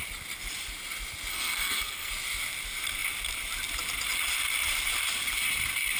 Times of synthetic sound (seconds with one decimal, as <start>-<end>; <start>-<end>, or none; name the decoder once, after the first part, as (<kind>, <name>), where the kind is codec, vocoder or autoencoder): 1.3-2.1 (codec, SNAC)